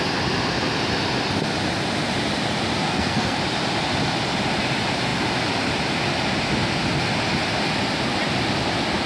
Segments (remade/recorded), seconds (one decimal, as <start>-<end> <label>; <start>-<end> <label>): 0.0-2.8 recorded; 2.8-3.4 remade; 3.4-9.1 recorded